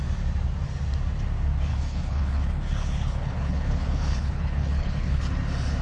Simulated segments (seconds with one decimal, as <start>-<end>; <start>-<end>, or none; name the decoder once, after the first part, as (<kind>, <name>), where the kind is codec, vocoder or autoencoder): 1.7-5.2 (codec, HILCodec)